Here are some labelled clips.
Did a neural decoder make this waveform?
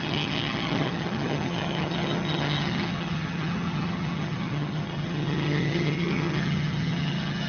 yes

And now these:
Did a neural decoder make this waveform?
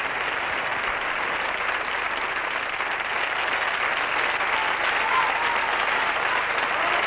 no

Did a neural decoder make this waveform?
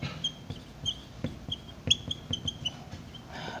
no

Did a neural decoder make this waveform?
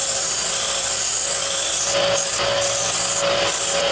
no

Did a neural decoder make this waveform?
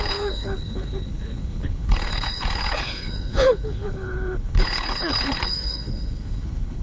yes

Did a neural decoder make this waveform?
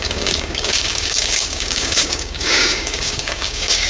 yes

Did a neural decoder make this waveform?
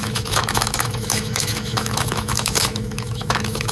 yes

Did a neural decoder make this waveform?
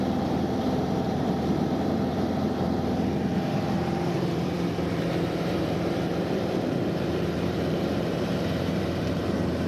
yes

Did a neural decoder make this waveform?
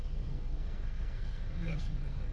yes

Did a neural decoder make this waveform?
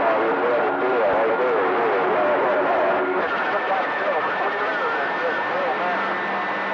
no